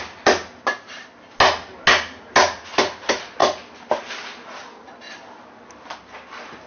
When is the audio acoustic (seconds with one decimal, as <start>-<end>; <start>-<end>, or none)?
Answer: 0.0-6.7